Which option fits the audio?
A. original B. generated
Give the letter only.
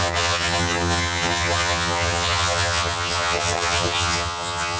B